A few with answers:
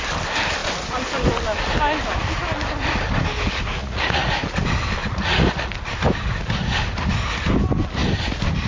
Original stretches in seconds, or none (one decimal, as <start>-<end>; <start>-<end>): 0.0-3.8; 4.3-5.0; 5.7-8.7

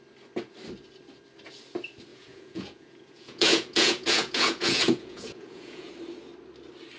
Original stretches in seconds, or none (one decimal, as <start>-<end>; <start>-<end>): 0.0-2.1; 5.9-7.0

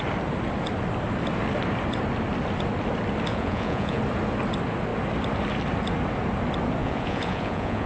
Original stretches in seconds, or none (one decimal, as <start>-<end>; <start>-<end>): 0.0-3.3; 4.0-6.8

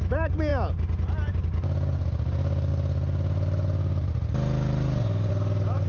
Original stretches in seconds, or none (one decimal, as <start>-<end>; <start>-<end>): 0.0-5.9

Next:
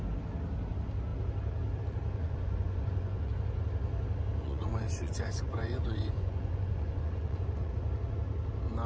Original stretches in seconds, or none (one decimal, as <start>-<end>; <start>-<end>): 0.0-2.2; 3.3-4.4; 7.7-8.9